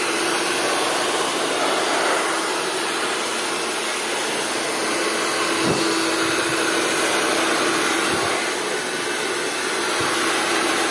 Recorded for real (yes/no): yes